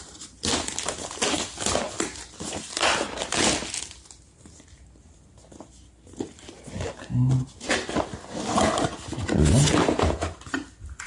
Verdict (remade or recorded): recorded